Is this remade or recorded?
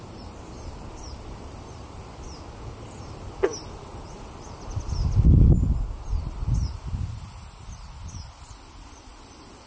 remade